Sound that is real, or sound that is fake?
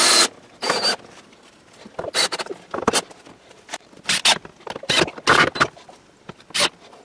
real